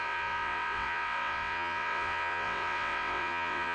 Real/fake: fake